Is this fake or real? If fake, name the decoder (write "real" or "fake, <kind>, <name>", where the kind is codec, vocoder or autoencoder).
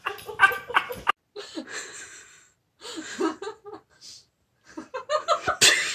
real